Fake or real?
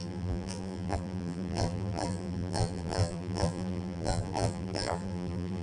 fake